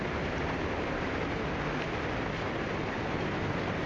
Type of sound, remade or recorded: recorded